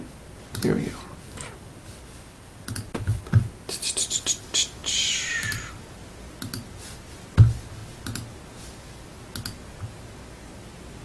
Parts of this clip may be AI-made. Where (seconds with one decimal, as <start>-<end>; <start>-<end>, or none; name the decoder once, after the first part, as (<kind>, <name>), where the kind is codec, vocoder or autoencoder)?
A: 1.1-2.0 (vocoder, BigVGAN v2); 4.8-6.1